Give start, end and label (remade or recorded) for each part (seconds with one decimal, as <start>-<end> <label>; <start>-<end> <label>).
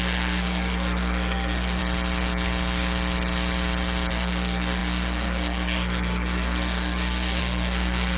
0.0-1.8 remade; 1.8-4.1 recorded; 4.1-8.2 remade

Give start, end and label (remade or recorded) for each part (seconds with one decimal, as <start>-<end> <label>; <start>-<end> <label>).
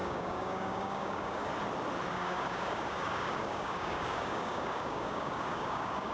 0.0-1.5 remade; 1.5-2.1 recorded; 2.1-6.1 remade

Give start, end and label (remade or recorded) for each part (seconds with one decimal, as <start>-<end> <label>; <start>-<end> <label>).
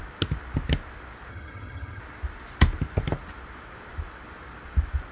0.0-1.3 recorded; 1.3-2.0 remade; 2.0-5.1 recorded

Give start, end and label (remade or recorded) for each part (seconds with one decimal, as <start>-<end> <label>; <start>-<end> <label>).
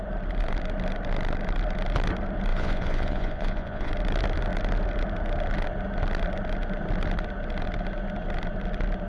0.0-2.5 recorded; 2.5-3.9 remade; 3.9-9.1 recorded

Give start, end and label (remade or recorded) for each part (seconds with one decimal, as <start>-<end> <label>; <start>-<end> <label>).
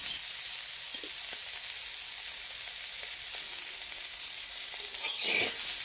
0.0-5.8 recorded